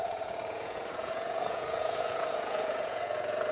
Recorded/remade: remade